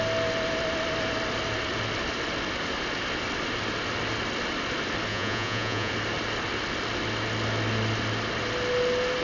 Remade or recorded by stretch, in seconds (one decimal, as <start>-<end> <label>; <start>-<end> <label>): 0.0-5.1 recorded; 5.1-5.9 remade; 5.9-9.2 recorded